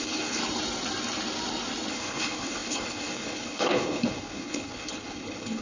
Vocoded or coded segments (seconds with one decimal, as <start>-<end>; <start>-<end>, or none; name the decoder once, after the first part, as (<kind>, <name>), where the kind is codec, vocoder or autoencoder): 0.0-0.4 (codec, HILCodec); 1.9-5.6